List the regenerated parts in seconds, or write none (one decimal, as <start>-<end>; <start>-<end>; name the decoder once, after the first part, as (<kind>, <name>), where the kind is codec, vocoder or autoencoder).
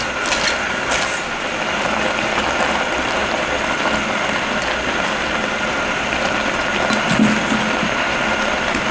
none